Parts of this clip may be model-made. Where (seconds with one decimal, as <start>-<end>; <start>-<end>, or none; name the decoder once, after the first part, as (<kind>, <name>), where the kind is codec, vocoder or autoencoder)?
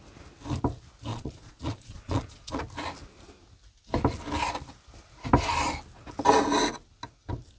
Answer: 1.1-2.6 (vocoder, Vocos)